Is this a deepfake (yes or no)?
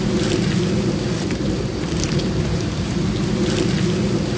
no